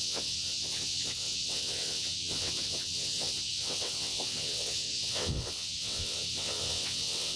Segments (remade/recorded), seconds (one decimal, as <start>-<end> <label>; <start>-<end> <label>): 0.0-7.4 remade